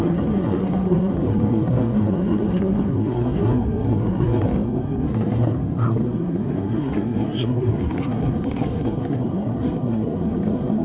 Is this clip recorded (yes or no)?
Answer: no